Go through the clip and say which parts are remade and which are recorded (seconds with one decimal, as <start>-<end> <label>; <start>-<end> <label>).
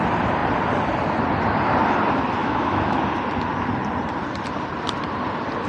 0.0-2.4 recorded; 2.4-3.0 remade; 3.0-5.7 recorded